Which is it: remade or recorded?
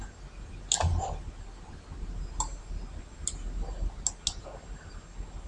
recorded